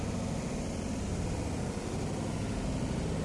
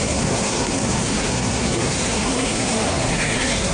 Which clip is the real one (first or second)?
first